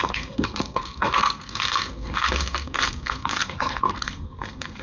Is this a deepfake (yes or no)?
yes